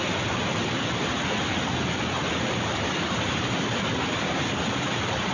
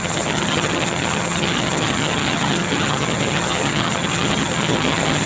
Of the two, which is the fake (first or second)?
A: second